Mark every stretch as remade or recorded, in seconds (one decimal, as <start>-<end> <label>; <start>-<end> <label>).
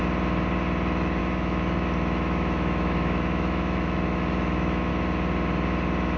0.0-1.2 recorded; 1.2-4.9 remade; 4.9-6.2 recorded